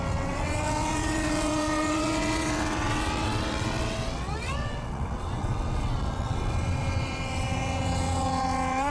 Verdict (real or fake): fake